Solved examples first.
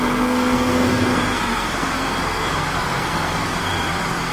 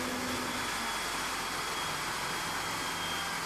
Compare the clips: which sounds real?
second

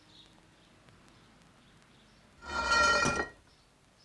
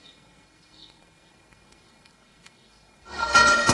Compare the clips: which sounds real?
first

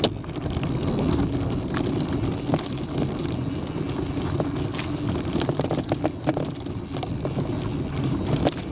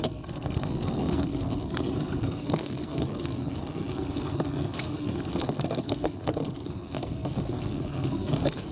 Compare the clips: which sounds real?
first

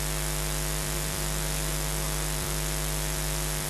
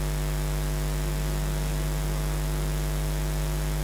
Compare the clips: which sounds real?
second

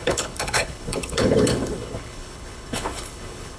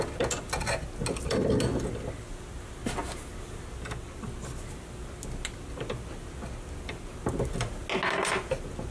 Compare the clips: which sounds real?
second